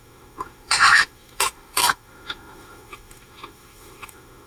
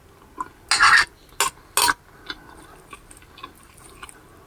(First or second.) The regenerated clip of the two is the first